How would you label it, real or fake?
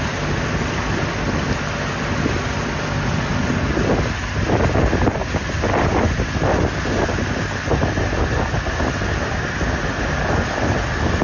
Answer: real